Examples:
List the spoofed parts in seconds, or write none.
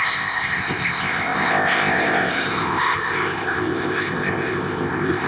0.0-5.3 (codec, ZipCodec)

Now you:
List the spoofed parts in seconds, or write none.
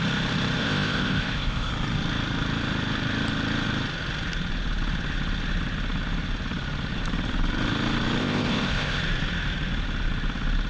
0.6-1.7 (codec, ZipCodec); 8.2-9.0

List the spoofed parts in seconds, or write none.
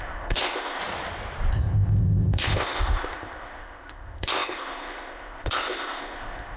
0.0-0.8 (codec, ZipCodec); 1.5-6.6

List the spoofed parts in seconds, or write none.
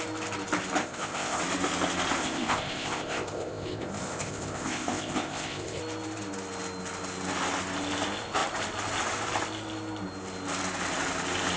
0.8-1.4 (codec, ZipCodec); 2.2-5.8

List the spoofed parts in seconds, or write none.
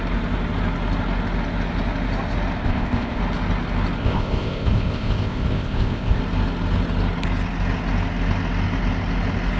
2.6-3.2 (codec, ZipCodec); 4.0-6.2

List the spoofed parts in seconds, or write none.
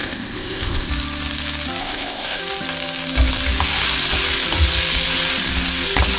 0.0-0.9 (codec, ZipCodec); 1.8-2.4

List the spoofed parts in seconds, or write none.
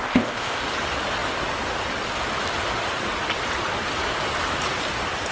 0.0-0.6 (codec, ZipCodec)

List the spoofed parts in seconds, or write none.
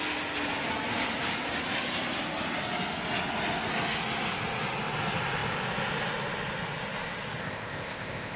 7.4-8.4 (codec, ZipCodec)